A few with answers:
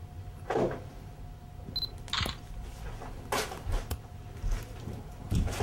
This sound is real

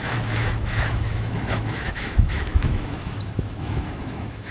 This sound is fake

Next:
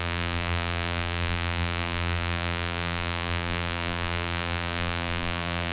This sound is fake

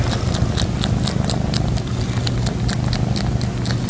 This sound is real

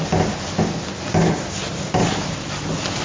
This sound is real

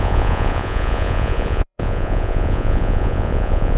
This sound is fake